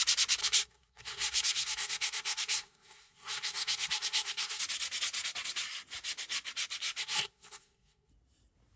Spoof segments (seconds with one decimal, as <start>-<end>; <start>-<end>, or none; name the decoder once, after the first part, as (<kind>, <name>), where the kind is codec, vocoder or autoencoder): 0.4-4.6 (codec, SNAC); 7.0-8.1